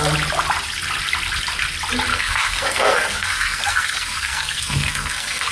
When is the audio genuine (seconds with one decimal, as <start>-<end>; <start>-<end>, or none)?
0.0-2.1